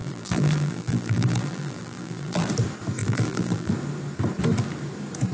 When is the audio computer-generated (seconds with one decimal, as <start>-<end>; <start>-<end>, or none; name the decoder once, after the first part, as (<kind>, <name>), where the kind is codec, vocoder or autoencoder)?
0.0-2.5 (vocoder, BigVGAN v2); 3.0-3.7

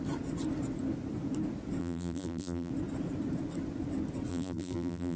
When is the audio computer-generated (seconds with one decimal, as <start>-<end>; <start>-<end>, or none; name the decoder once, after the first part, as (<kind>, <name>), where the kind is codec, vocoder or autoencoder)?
1.8-2.7 (vocoder, BigVGAN v2); 4.3-5.2

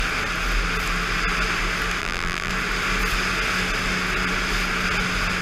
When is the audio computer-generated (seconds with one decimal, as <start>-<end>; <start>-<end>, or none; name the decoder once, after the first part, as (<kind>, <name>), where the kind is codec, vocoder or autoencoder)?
2.0-2.5 (vocoder, BigVGAN v2)

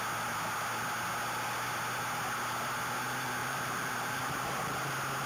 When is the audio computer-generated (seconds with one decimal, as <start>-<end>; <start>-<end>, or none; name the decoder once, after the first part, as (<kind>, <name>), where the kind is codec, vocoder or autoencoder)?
3.4-4.6 (vocoder, BigVGAN v2)

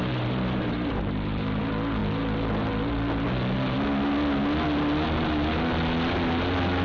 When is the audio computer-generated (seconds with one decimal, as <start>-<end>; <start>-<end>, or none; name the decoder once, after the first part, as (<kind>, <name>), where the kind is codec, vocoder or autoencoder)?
0.0-1.6 (vocoder, BigVGAN v2)

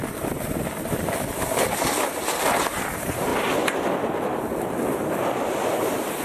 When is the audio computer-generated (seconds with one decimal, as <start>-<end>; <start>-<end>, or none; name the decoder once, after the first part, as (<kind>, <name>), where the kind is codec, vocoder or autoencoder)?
2.9-3.3 (vocoder, BigVGAN v2); 3.9-4.3; 5.7-6.2